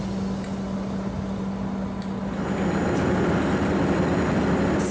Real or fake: real